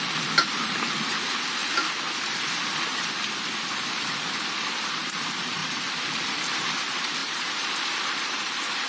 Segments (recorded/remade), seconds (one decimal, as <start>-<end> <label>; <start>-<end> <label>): 0.0-1.6 remade; 1.6-4.9 recorded; 4.9-8.9 remade